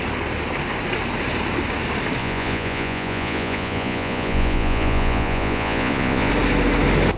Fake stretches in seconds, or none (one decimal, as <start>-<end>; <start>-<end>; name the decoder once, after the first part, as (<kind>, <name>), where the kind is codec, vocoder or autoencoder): 2.2-6.3 (vocoder, Vocos)